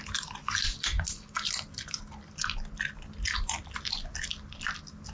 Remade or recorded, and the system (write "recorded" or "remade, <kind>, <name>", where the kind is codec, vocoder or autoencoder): recorded